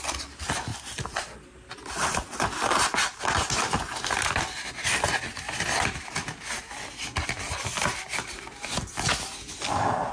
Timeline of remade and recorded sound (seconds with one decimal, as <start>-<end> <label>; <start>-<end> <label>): 0.0-10.1 recorded